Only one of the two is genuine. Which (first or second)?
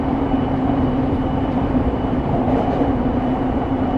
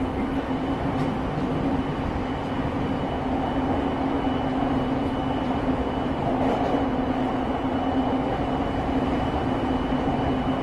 second